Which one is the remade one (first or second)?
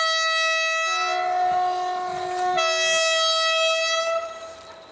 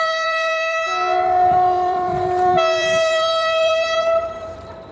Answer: second